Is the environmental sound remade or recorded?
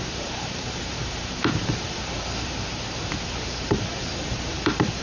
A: remade